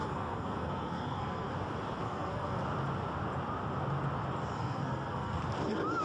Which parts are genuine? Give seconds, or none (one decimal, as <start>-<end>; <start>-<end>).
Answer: 1.5-2.0; 2.6-4.5; 5.4-6.0